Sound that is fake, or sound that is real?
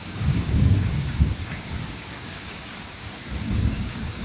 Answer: fake